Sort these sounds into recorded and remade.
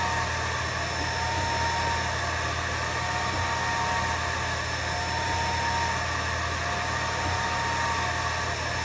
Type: recorded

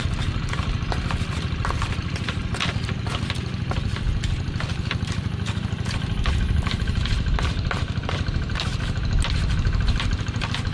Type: recorded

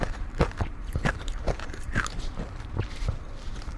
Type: remade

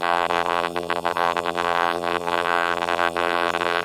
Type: remade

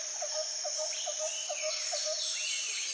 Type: recorded